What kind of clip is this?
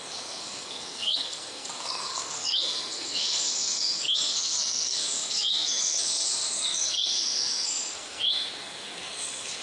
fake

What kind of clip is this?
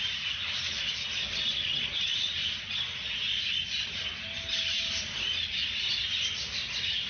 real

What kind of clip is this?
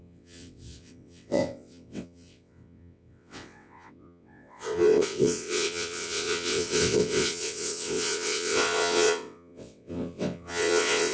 fake